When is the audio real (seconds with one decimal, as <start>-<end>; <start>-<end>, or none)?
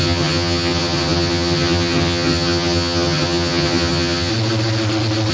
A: 4.3-5.3